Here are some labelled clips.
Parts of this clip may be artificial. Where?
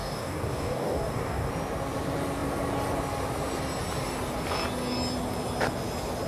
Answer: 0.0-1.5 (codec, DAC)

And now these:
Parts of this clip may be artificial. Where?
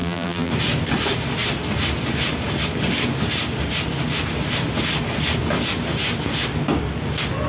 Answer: 0.0-0.5 (vocoder, BigVGAN v2)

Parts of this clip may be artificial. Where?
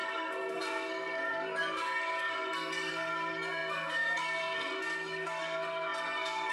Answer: 0.0-6.5 (codec, SNAC)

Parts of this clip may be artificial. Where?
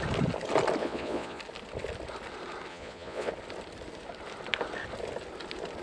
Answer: 0.8-1.4 (vocoder, Vocos); 2.7-3.3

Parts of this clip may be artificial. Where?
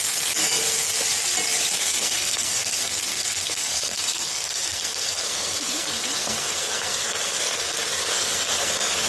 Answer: 0.0-0.9 (codec, SNAC); 1.7-9.1